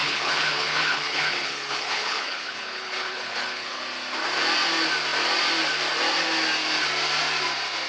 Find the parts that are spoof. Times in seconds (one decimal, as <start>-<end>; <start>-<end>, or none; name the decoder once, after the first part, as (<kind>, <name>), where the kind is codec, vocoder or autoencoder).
0.0-3.8 (codec, HILCodec)